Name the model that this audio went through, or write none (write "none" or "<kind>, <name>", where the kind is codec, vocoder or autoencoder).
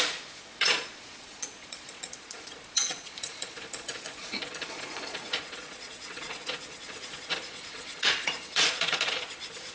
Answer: vocoder, Vocos